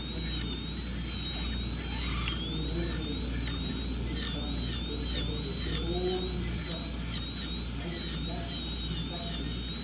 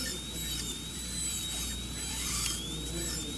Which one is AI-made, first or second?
second